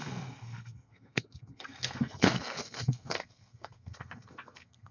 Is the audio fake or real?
fake